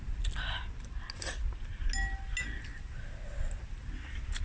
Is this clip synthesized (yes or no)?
no